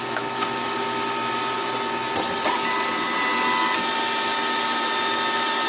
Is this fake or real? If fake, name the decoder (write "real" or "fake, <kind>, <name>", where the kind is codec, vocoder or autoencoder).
real